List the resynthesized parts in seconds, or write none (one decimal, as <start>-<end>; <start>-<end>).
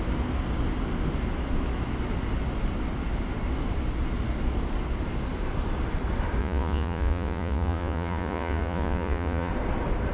6.4-9.5